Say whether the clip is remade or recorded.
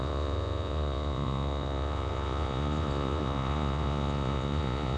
remade